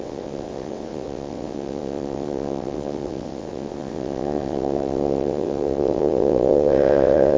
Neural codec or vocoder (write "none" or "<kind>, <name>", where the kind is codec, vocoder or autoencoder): vocoder, WaveNeXt